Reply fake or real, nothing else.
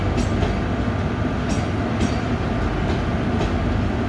real